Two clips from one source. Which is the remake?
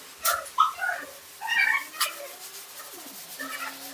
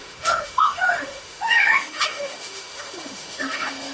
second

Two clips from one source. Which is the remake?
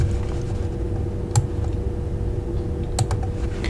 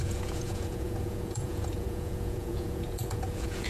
second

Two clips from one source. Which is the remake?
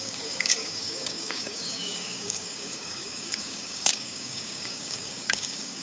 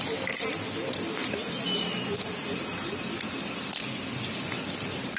first